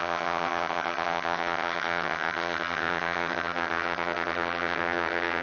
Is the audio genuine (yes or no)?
no